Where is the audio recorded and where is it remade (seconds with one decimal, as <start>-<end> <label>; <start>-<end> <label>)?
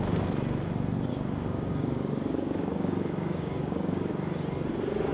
0.0-1.1 recorded; 1.1-4.1 remade; 4.1-5.1 recorded